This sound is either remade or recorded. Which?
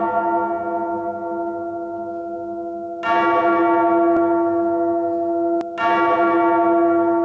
recorded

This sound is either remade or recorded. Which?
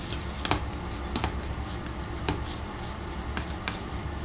recorded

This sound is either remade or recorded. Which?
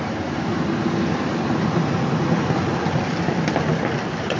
recorded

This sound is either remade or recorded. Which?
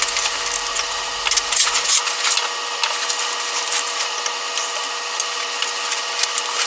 recorded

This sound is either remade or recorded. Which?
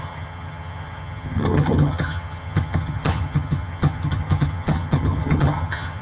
remade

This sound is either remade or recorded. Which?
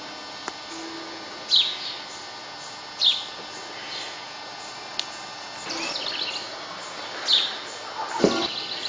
recorded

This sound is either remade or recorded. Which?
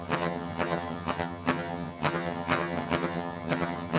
remade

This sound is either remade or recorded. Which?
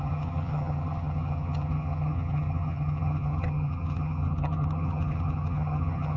remade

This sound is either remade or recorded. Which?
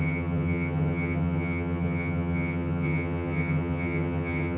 remade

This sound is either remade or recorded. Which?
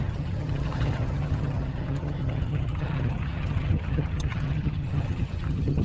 remade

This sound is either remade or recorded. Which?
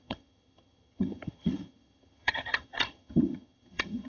remade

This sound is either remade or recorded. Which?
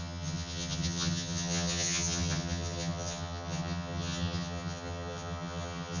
remade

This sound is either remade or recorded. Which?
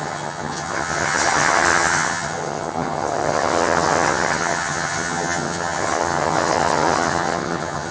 remade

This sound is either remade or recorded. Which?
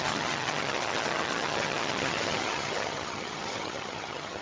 remade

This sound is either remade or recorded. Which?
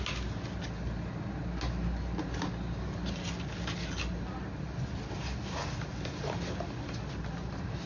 recorded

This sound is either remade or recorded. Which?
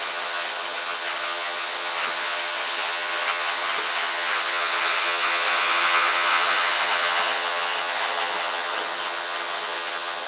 remade